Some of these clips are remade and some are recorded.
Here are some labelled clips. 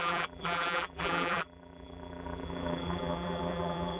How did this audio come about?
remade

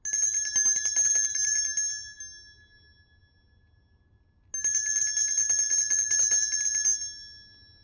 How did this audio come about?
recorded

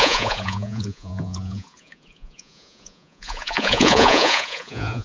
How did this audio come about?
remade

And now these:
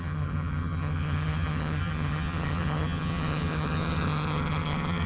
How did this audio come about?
remade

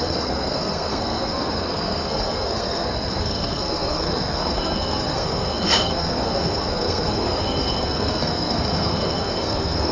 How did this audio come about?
remade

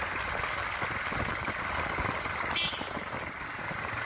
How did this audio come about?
recorded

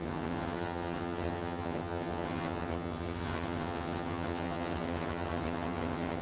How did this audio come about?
remade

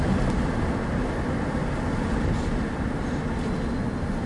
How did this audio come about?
recorded